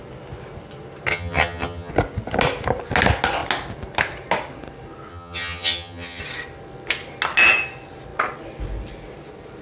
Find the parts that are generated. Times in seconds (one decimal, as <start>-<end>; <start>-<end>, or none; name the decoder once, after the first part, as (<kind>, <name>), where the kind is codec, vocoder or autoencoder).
1.1-1.9 (vocoder, HiFi-GAN); 5.1-6.2